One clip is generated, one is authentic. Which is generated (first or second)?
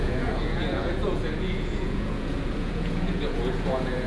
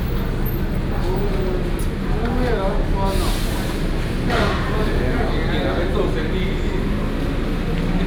first